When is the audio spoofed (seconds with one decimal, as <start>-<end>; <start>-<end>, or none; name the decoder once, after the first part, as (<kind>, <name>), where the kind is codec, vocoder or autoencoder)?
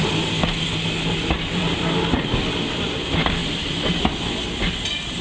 none